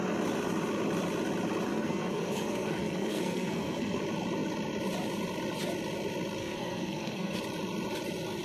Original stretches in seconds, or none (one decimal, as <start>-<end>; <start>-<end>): 0.0-1.7; 4.0-6.4; 7.4-8.4